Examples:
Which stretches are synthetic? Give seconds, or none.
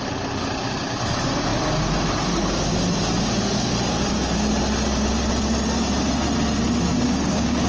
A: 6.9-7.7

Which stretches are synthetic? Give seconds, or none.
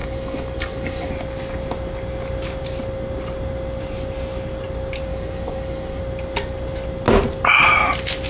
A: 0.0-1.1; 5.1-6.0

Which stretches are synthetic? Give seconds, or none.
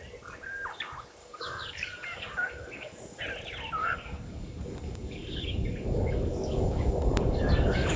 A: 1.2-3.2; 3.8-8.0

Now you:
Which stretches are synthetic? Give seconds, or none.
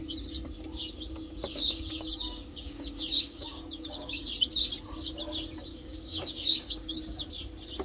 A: 1.5-4.2; 5.7-7.0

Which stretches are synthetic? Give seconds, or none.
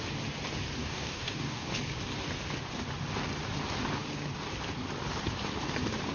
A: 0.8-1.7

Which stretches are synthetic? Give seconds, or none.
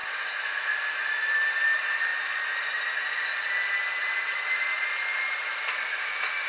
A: none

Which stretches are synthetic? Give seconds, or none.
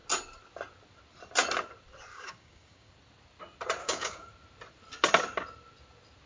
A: 2.1-2.9; 3.8-4.3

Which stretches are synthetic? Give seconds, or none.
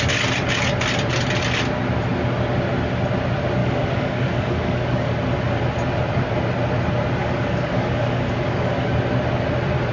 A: 3.6-5.1; 7.2-8.9